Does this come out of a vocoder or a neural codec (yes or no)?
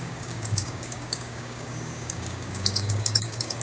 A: yes